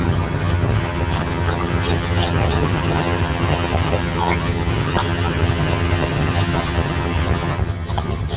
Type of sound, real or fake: fake